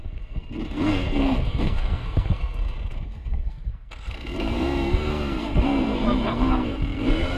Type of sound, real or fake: fake